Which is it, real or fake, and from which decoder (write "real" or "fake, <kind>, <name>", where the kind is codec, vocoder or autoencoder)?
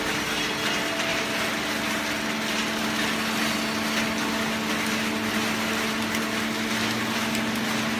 real